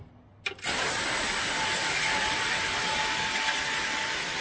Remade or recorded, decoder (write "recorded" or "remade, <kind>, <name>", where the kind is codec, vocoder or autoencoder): recorded